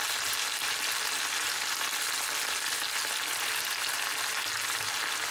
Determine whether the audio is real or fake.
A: real